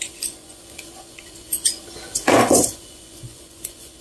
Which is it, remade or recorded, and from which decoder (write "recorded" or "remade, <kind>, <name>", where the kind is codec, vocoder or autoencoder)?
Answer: remade, vocoder, Vocos